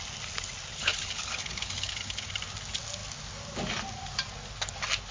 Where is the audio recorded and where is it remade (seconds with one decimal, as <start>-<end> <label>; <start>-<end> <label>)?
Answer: 0.0-0.7 recorded; 0.7-2.3 remade; 2.3-5.1 recorded